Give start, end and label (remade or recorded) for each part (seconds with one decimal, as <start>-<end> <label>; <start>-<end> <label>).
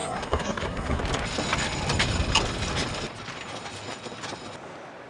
0.0-1.0 remade; 1.0-5.1 recorded